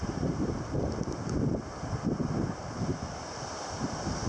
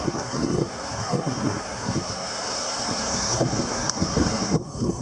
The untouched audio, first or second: first